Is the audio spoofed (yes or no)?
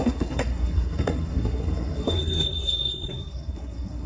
yes